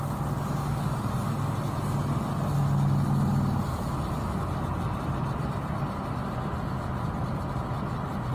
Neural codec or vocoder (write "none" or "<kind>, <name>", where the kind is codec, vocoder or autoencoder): none